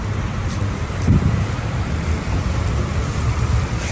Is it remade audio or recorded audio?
remade